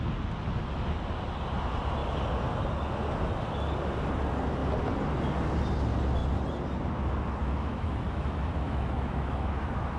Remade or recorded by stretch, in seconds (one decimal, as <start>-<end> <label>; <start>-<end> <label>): 0.0-7.4 recorded; 7.4-10.0 remade